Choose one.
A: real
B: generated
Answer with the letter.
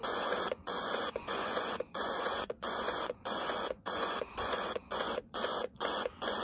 B